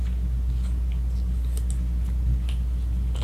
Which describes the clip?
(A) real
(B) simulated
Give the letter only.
A